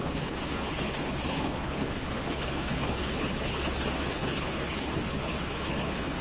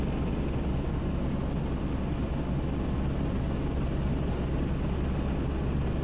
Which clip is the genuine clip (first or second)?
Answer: second